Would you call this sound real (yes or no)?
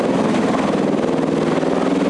yes